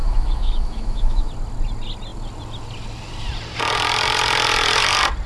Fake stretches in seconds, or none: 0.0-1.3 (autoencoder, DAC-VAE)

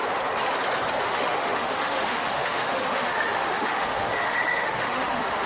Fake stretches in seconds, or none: 1.0-5.5 (autoencoder, DAC-VAE)

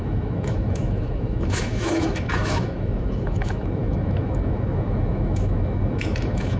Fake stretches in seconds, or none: 0.0-6.6 (autoencoder, DAC-VAE)

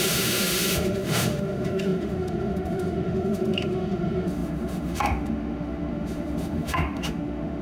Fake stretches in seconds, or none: 0.0-7.6 (autoencoder, DAC-VAE)